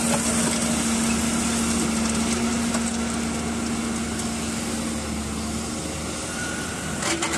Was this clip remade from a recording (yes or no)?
no